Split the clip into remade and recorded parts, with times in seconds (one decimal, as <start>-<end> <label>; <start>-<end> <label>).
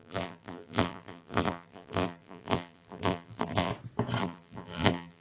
0.0-3.7 remade; 3.7-4.2 recorded; 4.2-5.2 remade